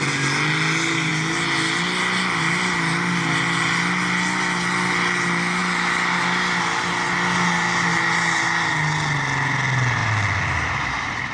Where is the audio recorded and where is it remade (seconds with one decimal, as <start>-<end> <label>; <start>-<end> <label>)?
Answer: 0.0-11.3 recorded